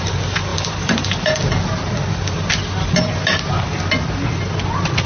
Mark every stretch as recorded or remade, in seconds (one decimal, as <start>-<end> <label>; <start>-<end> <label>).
0.0-0.5 recorded; 0.5-1.4 remade; 1.4-5.1 recorded